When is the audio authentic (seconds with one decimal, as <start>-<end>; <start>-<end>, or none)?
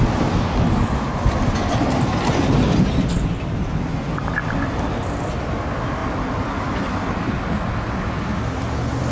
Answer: 0.0-9.1